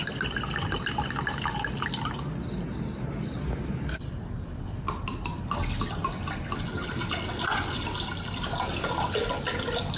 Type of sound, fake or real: real